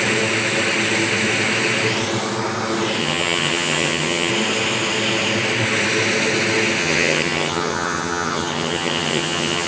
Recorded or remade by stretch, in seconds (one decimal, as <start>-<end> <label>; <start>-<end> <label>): 0.0-3.0 recorded; 3.0-4.3 remade; 4.3-6.8 recorded; 6.8-9.7 remade